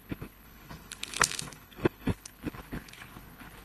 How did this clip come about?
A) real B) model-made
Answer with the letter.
B